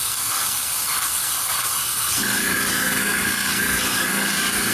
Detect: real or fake fake